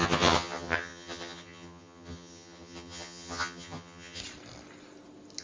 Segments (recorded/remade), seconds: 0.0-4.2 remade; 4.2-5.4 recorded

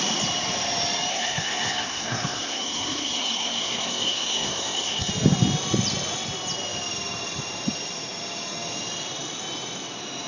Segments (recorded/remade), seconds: 0.0-1.1 recorded; 1.1-5.1 remade; 5.1-10.3 recorded

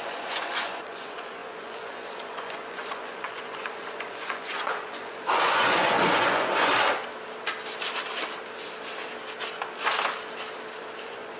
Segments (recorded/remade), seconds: 0.0-6.7 remade; 6.7-11.0 recorded; 11.0-11.4 remade

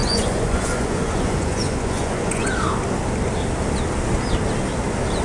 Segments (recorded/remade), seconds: 0.0-2.5 remade; 2.5-5.2 recorded

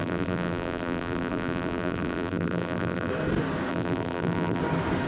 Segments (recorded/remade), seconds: 0.0-3.1 remade; 3.1-3.7 recorded; 3.7-4.6 remade; 4.6-5.1 recorded

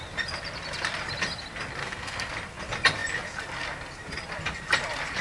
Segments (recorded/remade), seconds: 0.0-1.8 recorded; 1.8-2.3 remade; 2.3-5.2 recorded

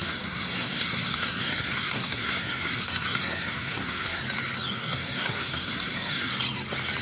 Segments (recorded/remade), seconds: 0.0-4.2 remade; 4.2-4.8 recorded; 4.8-6.3 remade; 6.3-7.0 recorded

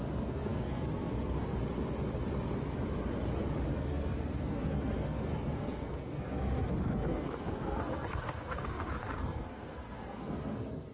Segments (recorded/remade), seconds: 0.0-1.6 remade; 1.6-3.7 recorded; 3.7-10.9 remade